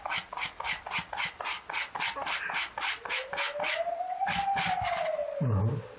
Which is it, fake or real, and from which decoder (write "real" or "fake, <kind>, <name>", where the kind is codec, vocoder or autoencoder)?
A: real